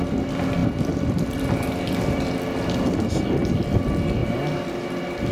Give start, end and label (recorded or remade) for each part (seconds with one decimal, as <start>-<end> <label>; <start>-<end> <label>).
0.0-0.6 recorded; 0.6-2.6 remade; 2.6-5.3 recorded